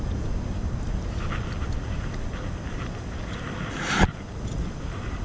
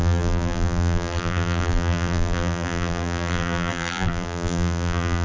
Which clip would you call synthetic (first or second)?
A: second